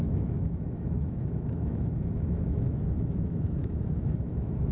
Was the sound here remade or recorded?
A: remade